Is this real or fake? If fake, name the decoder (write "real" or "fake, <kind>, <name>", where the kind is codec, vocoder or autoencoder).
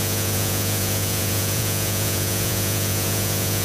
fake, vocoder, Vocos